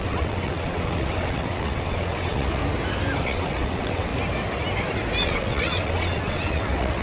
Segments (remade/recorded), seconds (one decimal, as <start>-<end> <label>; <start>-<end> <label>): 0.0-2.6 remade; 2.6-3.2 recorded; 3.2-4.1 remade; 4.1-5.2 recorded; 5.2-7.0 remade